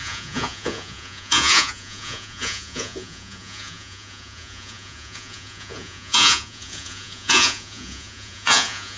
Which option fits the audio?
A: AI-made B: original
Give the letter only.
A